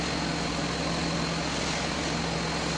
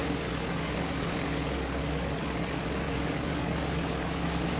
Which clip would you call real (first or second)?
first